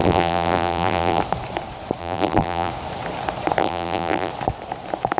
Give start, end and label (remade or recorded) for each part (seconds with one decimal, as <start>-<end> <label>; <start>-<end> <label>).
0.0-1.2 remade; 1.2-2.0 recorded; 2.0-2.7 remade; 2.7-3.6 recorded; 3.6-4.3 remade; 4.3-5.2 recorded